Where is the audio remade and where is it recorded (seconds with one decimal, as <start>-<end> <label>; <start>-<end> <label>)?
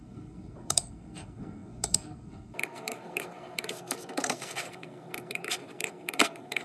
0.0-6.6 remade